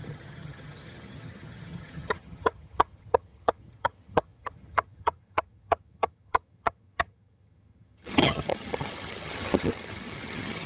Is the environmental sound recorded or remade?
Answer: remade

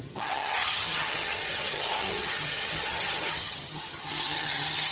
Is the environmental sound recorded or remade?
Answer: remade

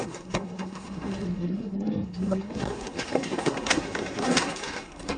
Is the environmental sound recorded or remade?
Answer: remade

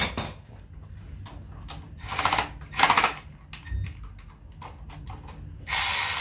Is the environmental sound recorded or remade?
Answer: recorded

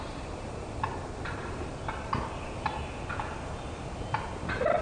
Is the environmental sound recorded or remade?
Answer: recorded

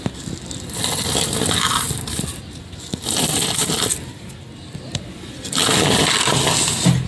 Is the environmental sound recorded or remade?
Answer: recorded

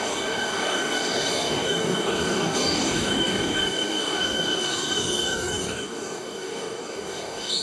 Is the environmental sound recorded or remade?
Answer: remade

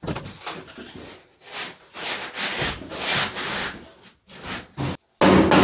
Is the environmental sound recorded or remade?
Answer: recorded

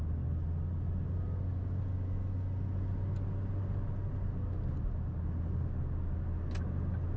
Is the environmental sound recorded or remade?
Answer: recorded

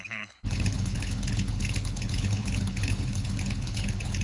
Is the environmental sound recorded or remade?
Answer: remade